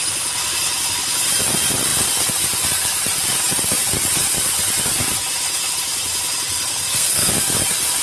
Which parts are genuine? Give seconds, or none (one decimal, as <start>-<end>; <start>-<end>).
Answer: 0.0-6.7; 7.3-8.0